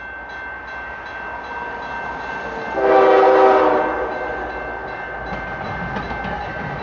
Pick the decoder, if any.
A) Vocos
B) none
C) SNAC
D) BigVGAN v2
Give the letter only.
B